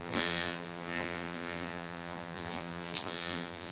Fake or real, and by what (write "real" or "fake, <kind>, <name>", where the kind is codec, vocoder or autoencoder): fake, vocoder, BigVGAN v2